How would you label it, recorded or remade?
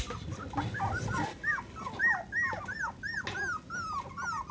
recorded